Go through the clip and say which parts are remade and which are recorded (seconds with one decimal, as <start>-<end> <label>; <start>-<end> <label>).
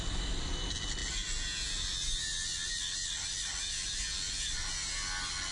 0.0-5.5 recorded